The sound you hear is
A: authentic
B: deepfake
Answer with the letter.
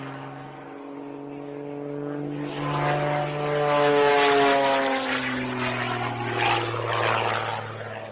A